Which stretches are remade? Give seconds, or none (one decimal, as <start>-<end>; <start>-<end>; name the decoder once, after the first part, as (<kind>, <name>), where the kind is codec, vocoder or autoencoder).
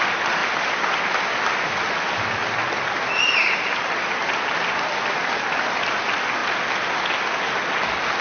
2.4-4.2 (vocoder, BigVGAN v2)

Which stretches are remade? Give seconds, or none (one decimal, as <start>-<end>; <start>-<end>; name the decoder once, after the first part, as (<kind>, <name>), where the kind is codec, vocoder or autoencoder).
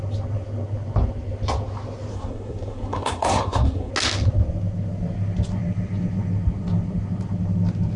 2.1-3.9 (codec, SNAC)